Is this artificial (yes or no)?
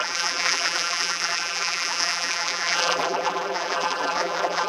yes